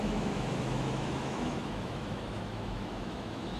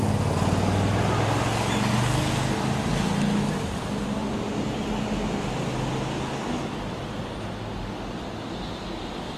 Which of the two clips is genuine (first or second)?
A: second